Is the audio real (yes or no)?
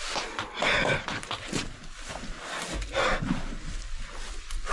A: yes